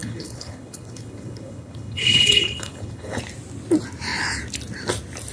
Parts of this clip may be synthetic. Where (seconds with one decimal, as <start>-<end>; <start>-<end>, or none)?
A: 0.0-3.2